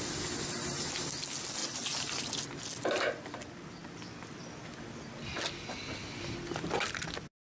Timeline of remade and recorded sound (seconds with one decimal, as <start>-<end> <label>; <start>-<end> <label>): 0.0-7.4 recorded

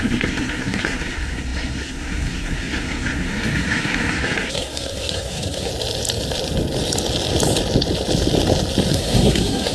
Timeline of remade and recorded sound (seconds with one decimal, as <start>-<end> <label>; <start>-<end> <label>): 0.0-5.7 remade; 5.7-8.9 recorded; 8.9-9.7 remade

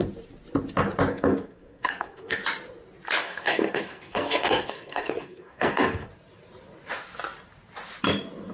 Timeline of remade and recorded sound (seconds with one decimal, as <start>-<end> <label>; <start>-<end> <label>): 0.0-1.1 recorded; 1.1-2.4 remade; 2.4-3.2 recorded; 3.2-6.1 remade; 6.1-8.5 recorded